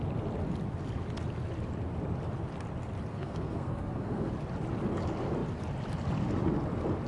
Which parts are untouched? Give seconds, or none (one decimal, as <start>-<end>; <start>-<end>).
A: 0.0-3.1; 4.3-7.1